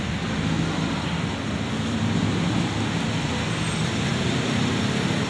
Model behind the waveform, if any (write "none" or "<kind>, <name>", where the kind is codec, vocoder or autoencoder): none